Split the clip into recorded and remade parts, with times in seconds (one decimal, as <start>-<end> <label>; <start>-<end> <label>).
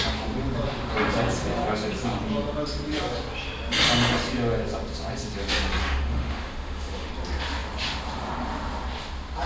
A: 0.0-5.8 recorded; 5.8-7.1 remade; 7.1-9.5 recorded